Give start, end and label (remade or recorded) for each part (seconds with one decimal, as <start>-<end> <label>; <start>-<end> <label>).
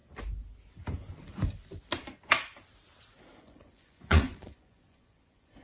0.0-3.4 recorded; 3.4-5.6 remade